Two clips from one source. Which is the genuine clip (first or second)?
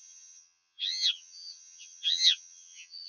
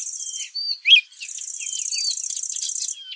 second